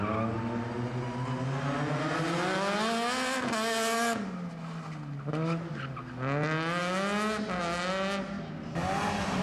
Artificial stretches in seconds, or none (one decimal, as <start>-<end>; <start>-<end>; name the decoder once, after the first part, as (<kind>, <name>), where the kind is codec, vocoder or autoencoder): none